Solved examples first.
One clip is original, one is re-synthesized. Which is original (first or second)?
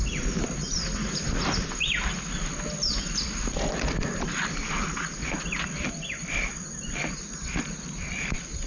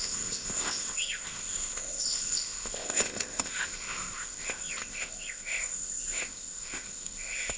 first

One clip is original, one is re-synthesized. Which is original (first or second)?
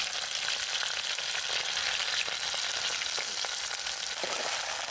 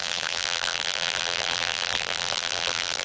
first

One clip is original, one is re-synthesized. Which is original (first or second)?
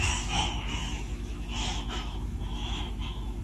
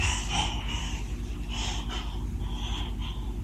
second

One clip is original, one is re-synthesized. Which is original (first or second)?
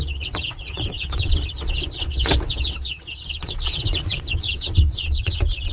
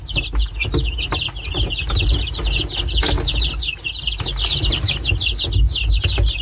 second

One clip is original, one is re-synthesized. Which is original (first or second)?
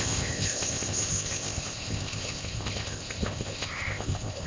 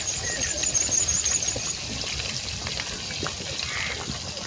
second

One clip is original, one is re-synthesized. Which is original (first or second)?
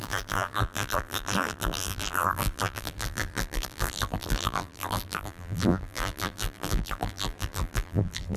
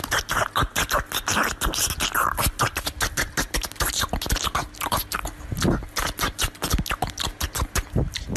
second